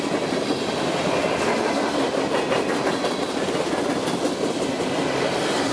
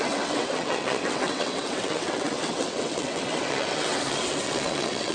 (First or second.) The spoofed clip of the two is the second